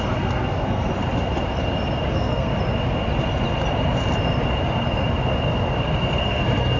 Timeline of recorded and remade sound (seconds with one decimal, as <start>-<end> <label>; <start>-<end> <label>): 0.0-0.9 remade; 0.9-2.1 recorded; 2.1-2.5 remade; 2.5-6.2 recorded; 6.2-6.8 remade